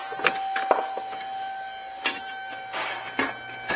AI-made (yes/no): no